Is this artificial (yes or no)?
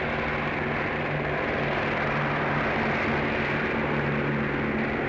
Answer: no